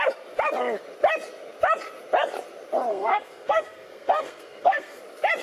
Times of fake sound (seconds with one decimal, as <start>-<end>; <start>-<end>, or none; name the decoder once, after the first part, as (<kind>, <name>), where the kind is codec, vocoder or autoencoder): 2.9-5.0 (codec, SNAC)